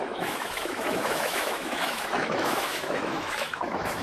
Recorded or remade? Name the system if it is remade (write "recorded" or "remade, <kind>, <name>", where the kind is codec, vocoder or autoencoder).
remade, autoencoder, DAC-VAE